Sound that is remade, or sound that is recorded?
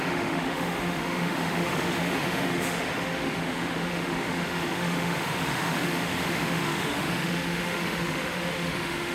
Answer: remade